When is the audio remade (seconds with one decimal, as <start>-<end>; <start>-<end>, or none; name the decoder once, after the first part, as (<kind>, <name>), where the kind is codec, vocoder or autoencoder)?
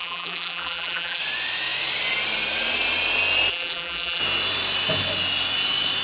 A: 0.0-1.2 (vocoder, BigVGAN v2); 3.5-4.2